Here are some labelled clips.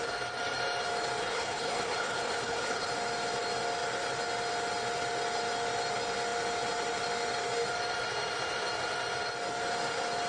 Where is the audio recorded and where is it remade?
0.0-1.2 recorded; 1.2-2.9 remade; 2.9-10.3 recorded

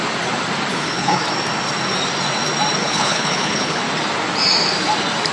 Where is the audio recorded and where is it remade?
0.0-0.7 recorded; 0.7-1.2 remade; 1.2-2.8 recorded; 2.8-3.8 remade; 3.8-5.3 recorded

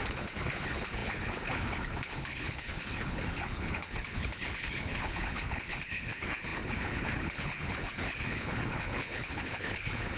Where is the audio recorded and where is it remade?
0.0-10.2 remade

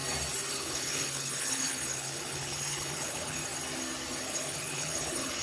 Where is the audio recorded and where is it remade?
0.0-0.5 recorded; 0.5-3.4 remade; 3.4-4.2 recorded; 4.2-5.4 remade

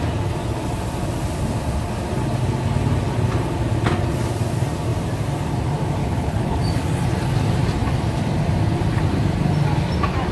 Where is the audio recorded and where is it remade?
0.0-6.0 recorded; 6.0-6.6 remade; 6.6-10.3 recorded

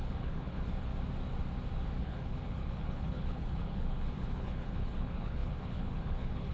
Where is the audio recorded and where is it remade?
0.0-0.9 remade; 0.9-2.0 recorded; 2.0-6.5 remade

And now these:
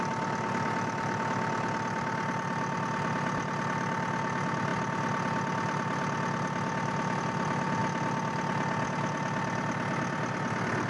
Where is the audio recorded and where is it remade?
0.0-10.9 recorded

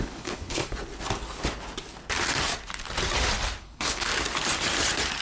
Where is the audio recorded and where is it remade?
0.0-0.6 remade; 0.6-3.6 recorded; 3.6-4.1 remade; 4.1-5.2 recorded